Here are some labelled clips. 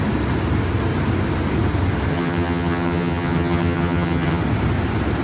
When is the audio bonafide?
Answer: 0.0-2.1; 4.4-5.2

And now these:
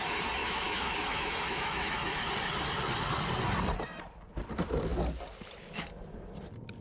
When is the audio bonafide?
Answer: 0.0-0.4; 2.3-6.8

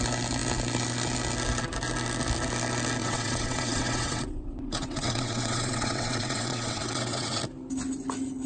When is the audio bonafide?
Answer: 0.0-3.0; 7.4-8.5

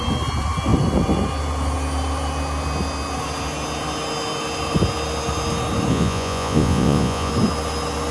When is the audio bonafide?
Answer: 0.0-5.9; 7.3-8.1

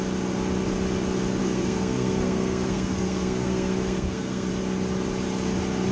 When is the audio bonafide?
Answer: 0.0-1.4; 4.5-5.9

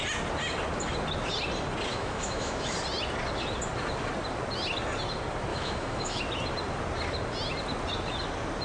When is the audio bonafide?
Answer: 0.0-1.9; 2.7-5.5; 6.2-8.6

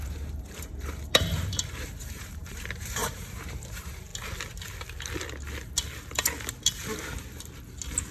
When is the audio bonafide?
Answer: 4.1-8.1